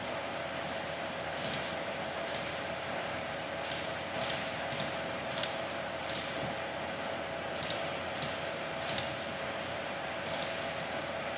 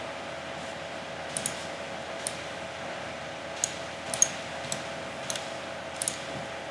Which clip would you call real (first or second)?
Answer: second